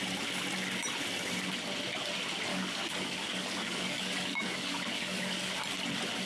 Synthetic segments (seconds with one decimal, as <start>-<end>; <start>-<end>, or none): 2.5-5.5